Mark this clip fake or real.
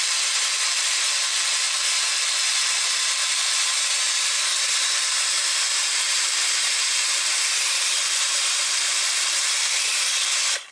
fake